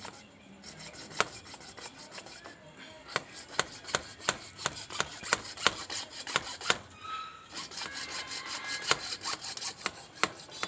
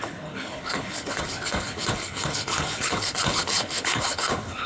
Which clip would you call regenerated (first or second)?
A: second